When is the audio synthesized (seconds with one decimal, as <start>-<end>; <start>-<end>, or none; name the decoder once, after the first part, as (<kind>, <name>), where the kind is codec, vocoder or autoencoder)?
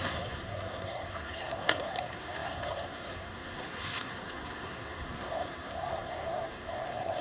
0.0-7.2 (codec, SNAC)